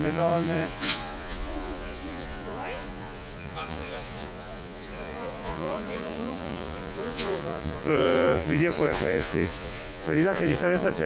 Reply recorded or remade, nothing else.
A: remade